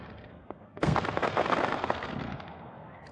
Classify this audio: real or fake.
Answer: fake